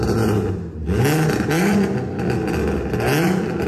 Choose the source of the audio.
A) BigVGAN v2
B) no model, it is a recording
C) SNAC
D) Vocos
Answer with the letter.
B